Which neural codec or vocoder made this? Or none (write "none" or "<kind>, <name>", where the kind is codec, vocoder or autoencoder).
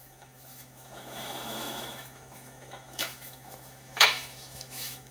autoencoder, DAC-VAE